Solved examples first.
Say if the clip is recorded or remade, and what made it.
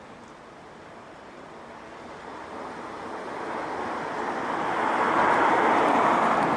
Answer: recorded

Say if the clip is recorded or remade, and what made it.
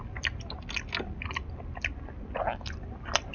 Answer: recorded